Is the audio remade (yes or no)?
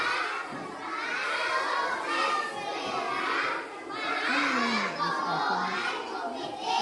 no